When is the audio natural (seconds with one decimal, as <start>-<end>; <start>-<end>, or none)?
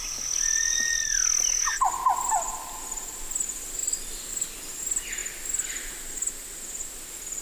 0.0-7.4